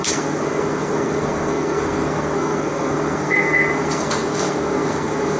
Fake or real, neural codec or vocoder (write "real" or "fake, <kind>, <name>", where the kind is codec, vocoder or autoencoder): fake, codec, SNAC